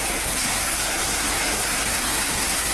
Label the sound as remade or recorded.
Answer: remade